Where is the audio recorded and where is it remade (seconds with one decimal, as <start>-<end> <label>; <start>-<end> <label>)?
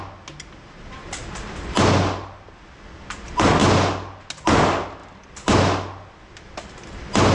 0.0-5.0 recorded; 5.0-5.6 remade; 5.6-7.3 recorded